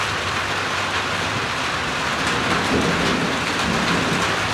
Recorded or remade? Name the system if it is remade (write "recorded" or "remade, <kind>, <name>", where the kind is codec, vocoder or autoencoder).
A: recorded